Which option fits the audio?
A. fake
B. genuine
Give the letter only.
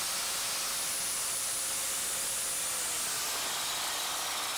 B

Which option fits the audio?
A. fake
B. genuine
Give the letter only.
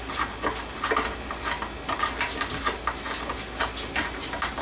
B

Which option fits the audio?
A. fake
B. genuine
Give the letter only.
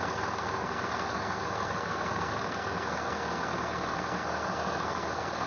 A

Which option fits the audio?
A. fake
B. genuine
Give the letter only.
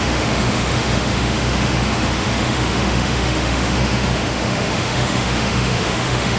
A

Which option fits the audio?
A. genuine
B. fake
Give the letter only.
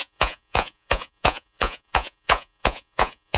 B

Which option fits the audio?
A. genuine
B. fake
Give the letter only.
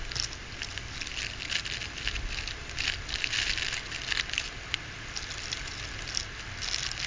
A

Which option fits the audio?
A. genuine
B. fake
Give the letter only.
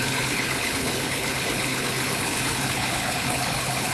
B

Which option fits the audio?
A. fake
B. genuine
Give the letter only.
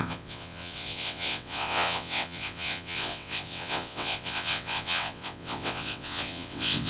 A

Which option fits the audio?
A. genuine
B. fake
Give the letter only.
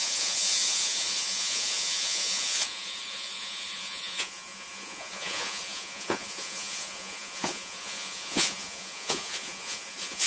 B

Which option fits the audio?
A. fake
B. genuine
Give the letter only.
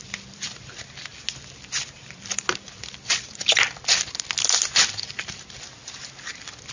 B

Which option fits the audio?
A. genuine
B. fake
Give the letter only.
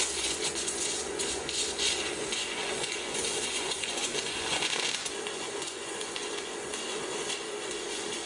B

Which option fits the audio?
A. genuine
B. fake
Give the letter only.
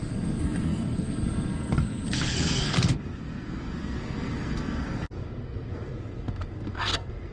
B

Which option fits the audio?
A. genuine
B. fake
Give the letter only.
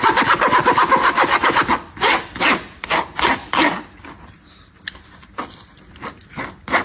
A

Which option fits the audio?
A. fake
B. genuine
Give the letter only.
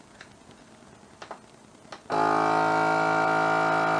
B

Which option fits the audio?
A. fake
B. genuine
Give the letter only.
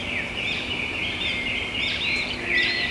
B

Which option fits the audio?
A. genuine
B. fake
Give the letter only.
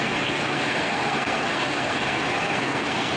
B